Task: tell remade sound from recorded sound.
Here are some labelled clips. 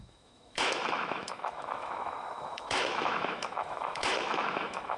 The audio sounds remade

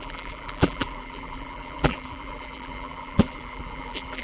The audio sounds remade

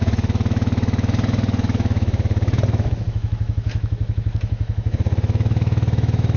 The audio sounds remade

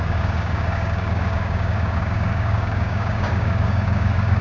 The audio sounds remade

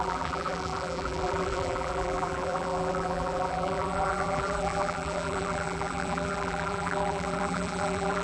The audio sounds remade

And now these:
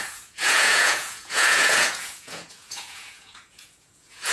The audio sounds remade